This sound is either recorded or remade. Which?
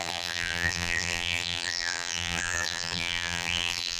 remade